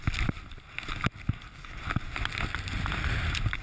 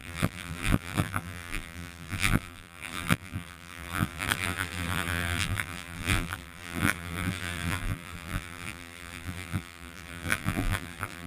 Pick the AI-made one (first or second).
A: second